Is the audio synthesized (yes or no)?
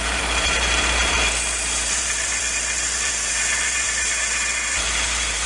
yes